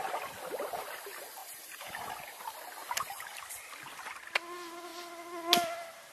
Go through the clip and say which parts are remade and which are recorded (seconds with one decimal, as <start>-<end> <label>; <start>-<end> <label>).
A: 0.0-1.4 recorded; 1.4-2.4 remade; 2.4-2.8 recorded; 2.8-3.4 remade; 3.4-6.1 recorded